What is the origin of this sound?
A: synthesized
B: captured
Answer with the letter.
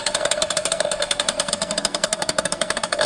A